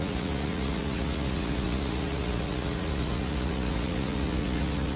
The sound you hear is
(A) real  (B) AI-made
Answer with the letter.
B